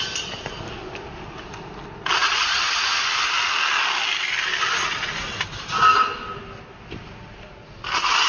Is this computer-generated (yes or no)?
no